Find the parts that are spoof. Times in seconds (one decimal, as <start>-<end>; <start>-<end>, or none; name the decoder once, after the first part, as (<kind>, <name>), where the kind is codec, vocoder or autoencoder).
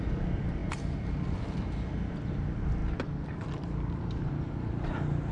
none